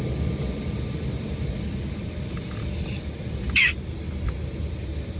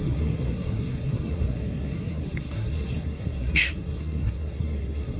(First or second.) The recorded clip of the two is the first